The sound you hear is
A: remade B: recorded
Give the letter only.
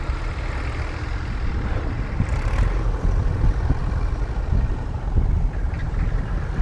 B